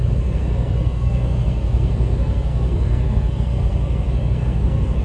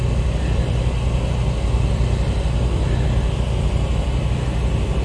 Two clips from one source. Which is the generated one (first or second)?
first